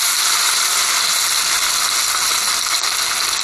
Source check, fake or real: real